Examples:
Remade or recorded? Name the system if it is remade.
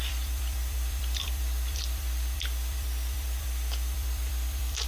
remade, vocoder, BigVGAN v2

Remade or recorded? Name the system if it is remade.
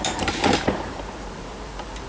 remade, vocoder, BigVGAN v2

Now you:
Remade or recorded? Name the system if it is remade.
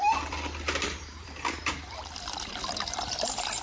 remade, vocoder, BigVGAN v2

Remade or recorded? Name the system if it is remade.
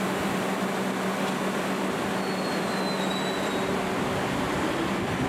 recorded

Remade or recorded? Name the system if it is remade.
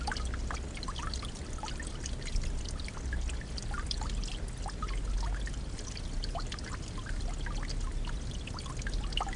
recorded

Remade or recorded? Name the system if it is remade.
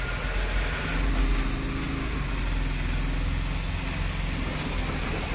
recorded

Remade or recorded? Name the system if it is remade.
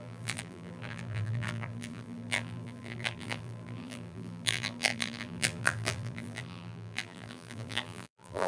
remade, vocoder, BigVGAN v2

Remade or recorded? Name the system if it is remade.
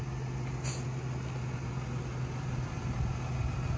recorded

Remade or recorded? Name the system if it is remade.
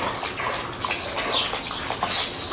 recorded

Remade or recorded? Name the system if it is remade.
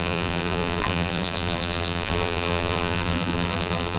remade, vocoder, BigVGAN v2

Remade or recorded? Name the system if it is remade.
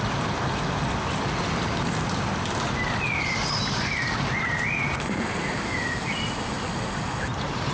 remade, vocoder, BigVGAN v2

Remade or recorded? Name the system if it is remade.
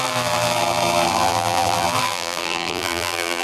remade, vocoder, BigVGAN v2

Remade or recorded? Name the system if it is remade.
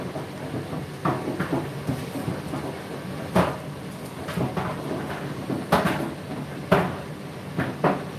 recorded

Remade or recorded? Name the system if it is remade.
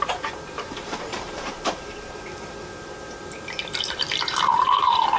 remade, vocoder, BigVGAN v2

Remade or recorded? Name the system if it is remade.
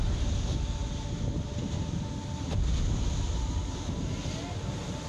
recorded